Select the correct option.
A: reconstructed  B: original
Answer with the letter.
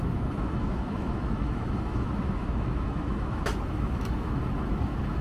A